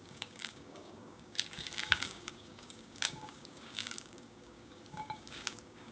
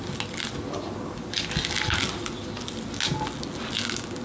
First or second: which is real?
second